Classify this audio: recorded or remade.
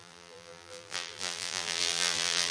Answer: remade